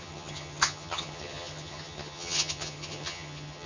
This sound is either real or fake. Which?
fake